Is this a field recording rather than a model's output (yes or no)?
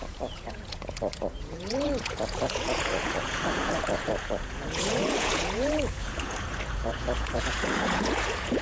no